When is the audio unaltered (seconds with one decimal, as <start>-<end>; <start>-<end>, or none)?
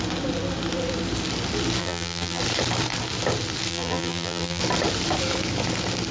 0.0-1.8; 2.4-3.7; 4.6-6.1